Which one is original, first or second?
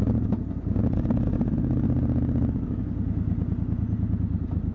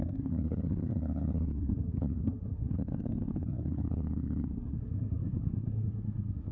first